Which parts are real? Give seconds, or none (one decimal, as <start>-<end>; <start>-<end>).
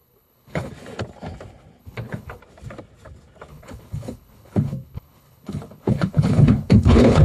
0.7-1.8; 2.4-3.5